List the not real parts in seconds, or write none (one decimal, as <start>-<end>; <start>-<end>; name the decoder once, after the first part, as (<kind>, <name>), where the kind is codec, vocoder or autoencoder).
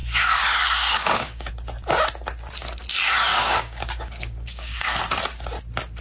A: 0.0-1.5 (codec, DAC); 3.3-5.0